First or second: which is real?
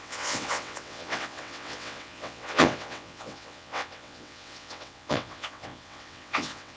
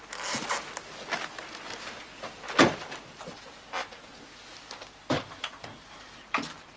second